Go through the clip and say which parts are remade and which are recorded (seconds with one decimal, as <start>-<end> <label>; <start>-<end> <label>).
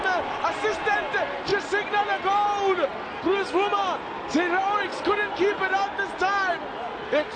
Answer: 0.0-2.9 recorded; 2.9-3.5 remade; 3.5-7.4 recorded